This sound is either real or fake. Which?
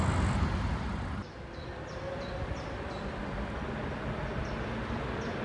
real